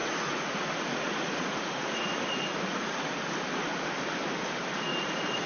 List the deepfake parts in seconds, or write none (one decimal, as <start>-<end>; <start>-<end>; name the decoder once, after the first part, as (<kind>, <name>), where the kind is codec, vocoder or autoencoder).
0.0-3.3 (vocoder, Vocos); 4.9-5.5